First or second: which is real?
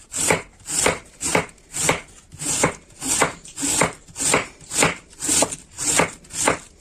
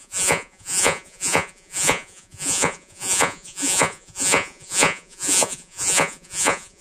first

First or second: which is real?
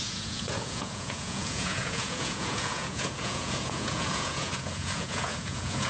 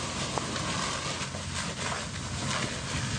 second